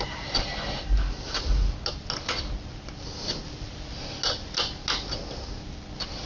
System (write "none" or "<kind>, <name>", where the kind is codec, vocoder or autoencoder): none